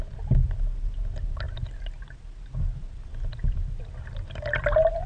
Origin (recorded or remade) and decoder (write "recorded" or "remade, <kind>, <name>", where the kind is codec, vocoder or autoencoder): recorded